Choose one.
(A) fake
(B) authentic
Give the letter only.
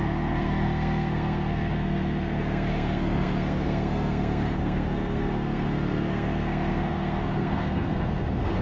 A